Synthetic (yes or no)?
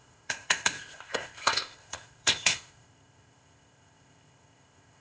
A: yes